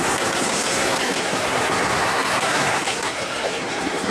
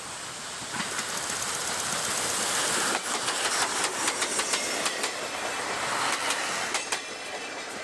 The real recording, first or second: second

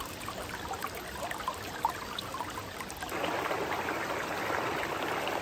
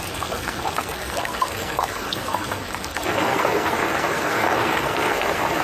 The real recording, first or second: first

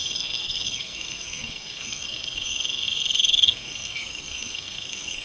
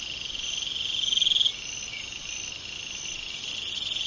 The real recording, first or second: second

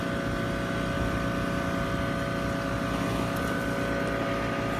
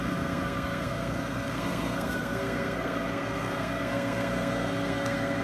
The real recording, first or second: first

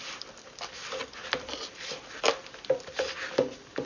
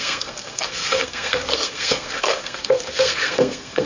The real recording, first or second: first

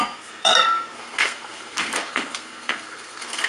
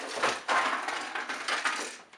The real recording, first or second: second